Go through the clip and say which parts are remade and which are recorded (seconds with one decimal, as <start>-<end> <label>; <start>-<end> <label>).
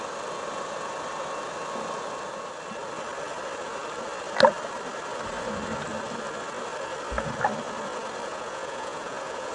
0.0-8.3 recorded; 8.3-9.5 remade